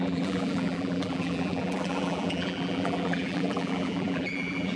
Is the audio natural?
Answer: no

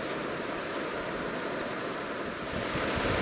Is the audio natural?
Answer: no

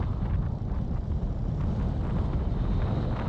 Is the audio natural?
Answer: yes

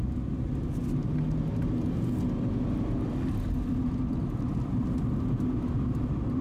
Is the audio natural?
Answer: yes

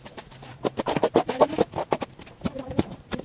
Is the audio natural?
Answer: no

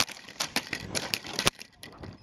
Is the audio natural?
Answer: no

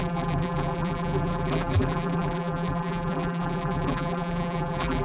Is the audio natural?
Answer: no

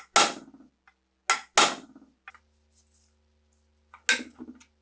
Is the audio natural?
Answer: yes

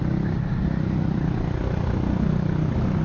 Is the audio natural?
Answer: yes